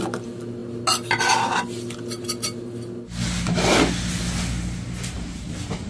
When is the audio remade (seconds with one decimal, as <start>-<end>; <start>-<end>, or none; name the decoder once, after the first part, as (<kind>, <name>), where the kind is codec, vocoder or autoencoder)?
none